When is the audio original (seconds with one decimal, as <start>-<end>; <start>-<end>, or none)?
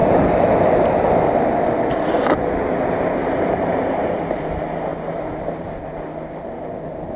0.0-3.2; 4.1-4.9; 5.7-7.2